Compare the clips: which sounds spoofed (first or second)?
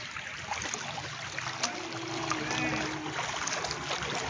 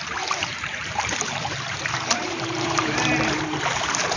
second